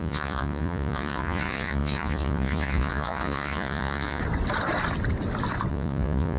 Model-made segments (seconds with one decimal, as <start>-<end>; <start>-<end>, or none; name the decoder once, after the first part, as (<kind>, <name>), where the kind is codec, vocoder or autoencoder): 0.0-4.2 (vocoder, Vocos); 5.7-6.4

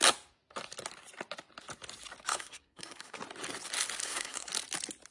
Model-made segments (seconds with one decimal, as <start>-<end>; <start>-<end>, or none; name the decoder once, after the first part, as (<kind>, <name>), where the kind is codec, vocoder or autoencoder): 2.3-3.2 (codec, SNAC); 4.0-4.5

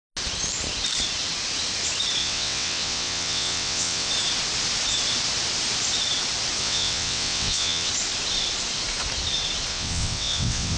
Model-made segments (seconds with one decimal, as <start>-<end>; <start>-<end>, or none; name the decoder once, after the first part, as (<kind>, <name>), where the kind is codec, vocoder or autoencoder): 2.2-4.1 (vocoder, WaveNeXt); 6.6-7.9; 9.7-10.8